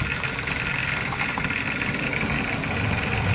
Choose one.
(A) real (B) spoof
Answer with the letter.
A